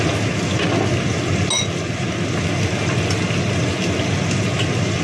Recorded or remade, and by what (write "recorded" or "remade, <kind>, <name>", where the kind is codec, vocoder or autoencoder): recorded